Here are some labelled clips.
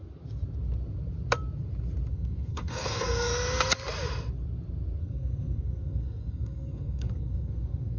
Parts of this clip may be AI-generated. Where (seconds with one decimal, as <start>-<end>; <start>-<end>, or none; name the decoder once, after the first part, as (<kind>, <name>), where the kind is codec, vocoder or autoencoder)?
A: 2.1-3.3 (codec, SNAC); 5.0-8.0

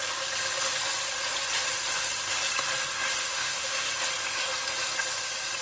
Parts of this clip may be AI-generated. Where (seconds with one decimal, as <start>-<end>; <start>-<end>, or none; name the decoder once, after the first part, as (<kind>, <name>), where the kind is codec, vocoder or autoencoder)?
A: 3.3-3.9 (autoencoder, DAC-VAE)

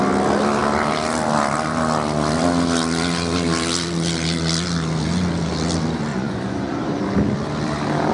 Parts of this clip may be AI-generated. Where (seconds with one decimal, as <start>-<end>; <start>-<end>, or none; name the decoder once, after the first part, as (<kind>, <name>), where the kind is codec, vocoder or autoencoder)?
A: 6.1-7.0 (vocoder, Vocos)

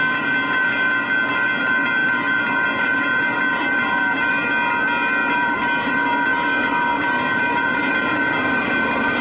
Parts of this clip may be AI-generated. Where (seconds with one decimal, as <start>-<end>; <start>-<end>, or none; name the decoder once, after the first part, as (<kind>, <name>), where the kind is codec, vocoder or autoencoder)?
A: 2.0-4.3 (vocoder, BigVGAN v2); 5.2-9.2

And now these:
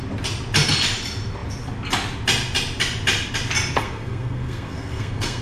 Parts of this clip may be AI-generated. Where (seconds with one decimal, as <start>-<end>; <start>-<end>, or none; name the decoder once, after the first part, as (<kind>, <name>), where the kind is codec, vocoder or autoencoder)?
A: 3.8-5.4 (codec, SNAC)